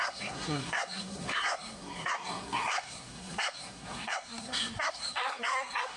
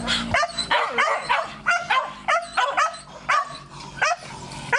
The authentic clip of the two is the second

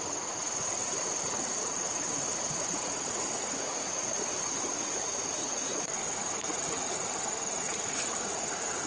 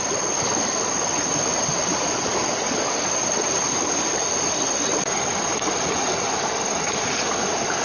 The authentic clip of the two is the second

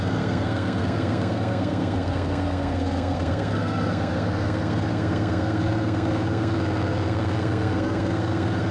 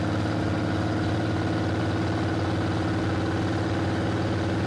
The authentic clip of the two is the second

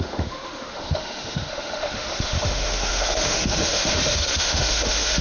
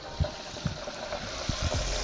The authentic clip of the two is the second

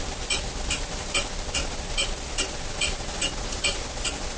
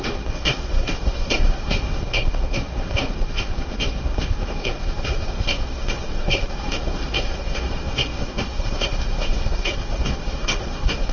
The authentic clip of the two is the first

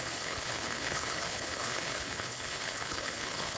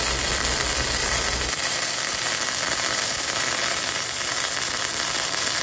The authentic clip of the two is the second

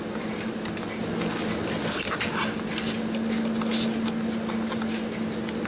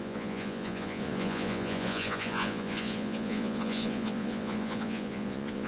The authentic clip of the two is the first